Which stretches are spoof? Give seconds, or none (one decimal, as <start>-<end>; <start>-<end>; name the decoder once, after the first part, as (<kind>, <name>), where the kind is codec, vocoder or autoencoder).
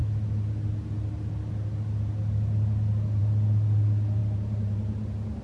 4.2-5.4 (vocoder, BigVGAN v2)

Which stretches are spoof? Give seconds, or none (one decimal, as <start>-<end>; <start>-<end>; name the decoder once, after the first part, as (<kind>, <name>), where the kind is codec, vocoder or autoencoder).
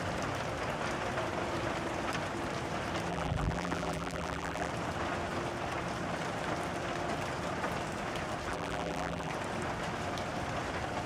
3.1-4.7 (vocoder, BigVGAN v2); 8.5-9.3